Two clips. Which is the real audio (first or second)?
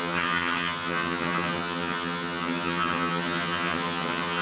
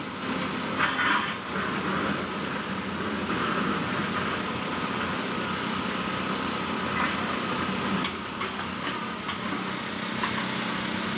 second